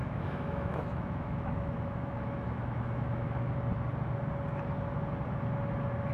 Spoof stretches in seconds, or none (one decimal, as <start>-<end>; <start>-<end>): 0.0-3.6